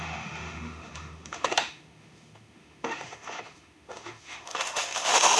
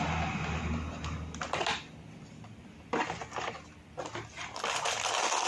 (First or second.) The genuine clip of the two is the second